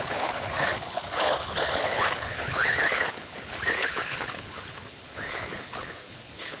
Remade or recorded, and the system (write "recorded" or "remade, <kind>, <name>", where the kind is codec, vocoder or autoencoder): remade, codec, HILCodec